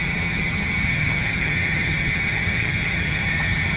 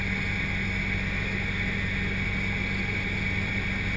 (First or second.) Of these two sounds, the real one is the second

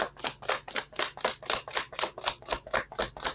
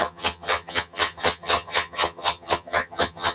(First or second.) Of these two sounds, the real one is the first